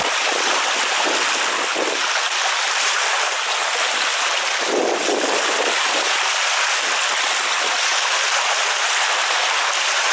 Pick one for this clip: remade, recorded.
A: recorded